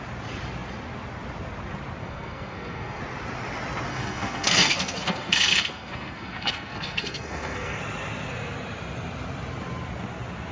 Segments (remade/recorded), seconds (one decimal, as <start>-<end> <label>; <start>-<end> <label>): 0.0-2.0 recorded; 2.0-3.0 remade; 3.0-3.9 recorded; 3.9-7.8 remade; 7.8-10.5 recorded